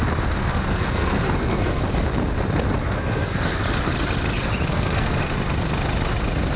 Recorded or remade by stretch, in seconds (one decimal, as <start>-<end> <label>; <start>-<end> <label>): 0.0-0.4 recorded; 0.4-1.8 remade; 1.8-2.8 recorded; 2.8-3.6 remade; 3.6-4.7 recorded; 4.7-5.3 remade; 5.3-6.6 recorded